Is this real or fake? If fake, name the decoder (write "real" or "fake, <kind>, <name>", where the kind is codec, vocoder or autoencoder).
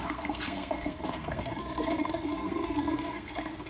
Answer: fake, codec, SNAC